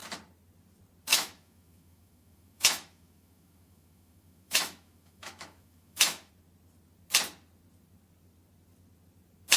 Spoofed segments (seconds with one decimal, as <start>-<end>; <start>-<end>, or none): 1.1-6.3